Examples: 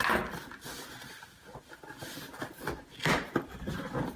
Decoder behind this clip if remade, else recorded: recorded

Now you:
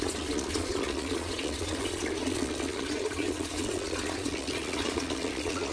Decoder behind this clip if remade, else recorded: remade, vocoder, Vocos